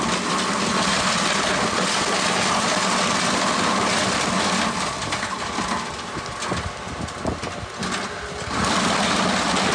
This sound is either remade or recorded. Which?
recorded